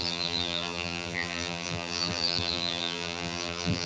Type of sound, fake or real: fake